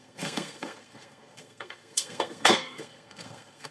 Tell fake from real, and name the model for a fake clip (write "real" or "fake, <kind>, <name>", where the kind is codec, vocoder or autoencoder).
fake, codec, SNAC